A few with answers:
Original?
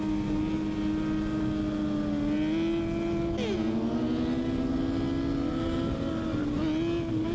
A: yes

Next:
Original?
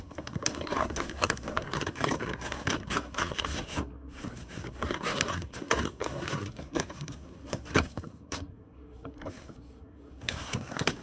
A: no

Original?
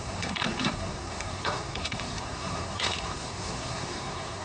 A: no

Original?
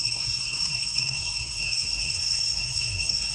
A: no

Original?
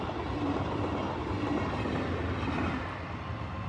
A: yes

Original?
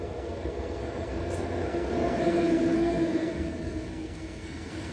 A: no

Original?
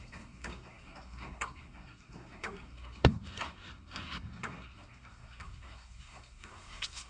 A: no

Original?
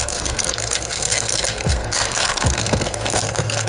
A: no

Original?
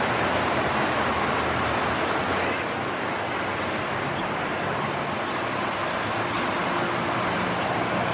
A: yes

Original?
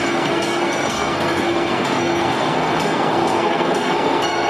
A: no